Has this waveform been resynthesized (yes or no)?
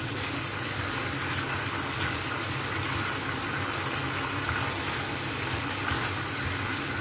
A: no